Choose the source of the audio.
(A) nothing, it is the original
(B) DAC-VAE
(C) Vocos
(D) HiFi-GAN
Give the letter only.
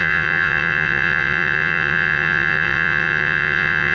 C